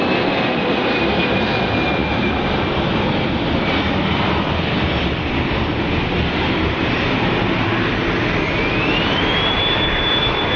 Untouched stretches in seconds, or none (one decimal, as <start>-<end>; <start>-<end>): 0.0-2.0; 7.2-10.6